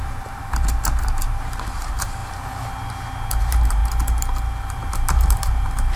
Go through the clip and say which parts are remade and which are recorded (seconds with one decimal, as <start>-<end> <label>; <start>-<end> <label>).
0.0-2.2 remade; 2.2-3.4 recorded; 3.4-3.8 remade; 3.8-4.6 recorded; 4.6-6.0 remade